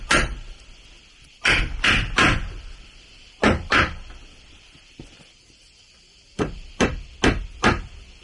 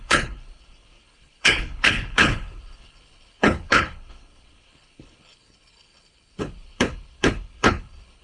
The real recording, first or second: first